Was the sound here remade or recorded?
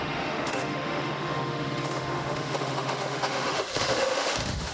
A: remade